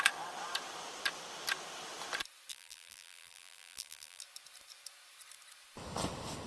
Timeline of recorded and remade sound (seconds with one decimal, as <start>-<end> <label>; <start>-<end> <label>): 0.0-2.5 recorded; 2.5-4.2 remade; 4.2-6.5 recorded